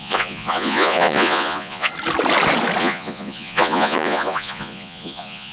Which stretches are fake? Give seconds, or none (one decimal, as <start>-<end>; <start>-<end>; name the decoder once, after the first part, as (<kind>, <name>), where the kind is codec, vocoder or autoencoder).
0.0-1.9 (vocoder, Vocos); 2.8-5.5